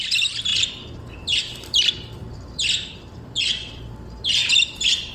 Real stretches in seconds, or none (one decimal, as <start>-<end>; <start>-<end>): 0.5-1.4; 2.2-2.9